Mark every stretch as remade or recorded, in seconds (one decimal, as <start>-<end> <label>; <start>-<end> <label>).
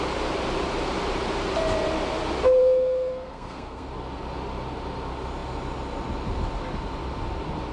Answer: 0.0-2.6 recorded; 2.6-3.9 remade; 3.9-7.7 recorded